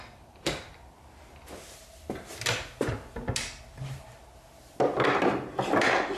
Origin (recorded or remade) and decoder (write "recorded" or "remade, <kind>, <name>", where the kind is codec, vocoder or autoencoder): recorded